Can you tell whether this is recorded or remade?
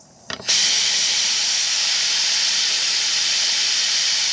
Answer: recorded